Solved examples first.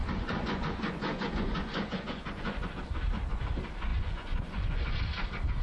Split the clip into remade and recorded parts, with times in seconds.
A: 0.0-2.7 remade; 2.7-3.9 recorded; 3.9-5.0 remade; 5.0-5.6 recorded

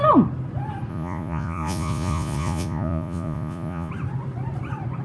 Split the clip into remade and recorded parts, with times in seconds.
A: 0.0-0.9 recorded; 0.9-3.9 remade; 3.9-5.0 recorded

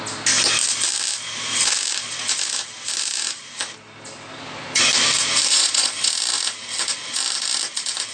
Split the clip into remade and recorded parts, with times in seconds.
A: 0.0-5.5 recorded; 5.5-6.1 remade; 6.1-8.1 recorded